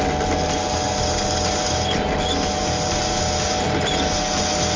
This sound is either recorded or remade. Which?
recorded